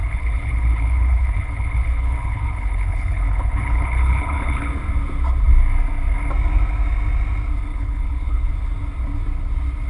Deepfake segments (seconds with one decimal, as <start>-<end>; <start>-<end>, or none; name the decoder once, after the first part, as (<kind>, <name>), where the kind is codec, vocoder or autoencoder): 0.0-4.7 (codec, HILCodec); 7.7-8.5

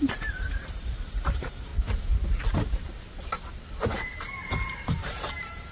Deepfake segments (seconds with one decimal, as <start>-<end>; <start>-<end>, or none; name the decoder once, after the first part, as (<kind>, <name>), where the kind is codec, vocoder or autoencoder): 0.0-1.7 (vocoder, BigVGAN v2); 4.5-5.7

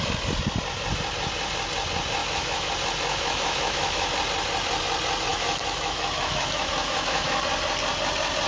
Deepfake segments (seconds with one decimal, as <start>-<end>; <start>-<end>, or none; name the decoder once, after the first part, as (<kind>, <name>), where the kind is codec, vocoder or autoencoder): 2.2-2.7 (autoencoder, DAC-VAE); 3.1-4.1; 5.3-7.4

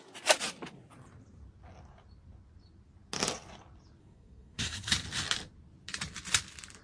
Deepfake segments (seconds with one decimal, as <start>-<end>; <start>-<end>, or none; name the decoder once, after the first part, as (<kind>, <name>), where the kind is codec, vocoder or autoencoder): 4.0-4.9 (codec, SNAC)

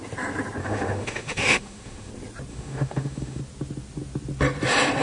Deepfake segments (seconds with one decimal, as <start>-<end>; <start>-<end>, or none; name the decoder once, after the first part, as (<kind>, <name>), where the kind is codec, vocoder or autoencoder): 0.6-2.1 (autoencoder, DAC-VAE); 2.5-3.4

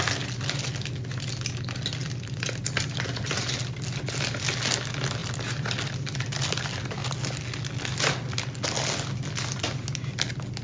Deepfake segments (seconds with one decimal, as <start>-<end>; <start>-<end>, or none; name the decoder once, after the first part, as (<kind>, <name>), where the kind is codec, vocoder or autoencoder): 2.0-3.5 (vocoder, BigVGAN v2); 5.2-6.5